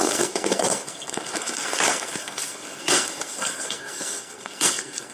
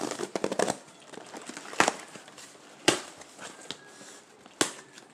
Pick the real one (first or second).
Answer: second